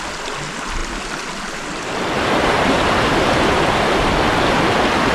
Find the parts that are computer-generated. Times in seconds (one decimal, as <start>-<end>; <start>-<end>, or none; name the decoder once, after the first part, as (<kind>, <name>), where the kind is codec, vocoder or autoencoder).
none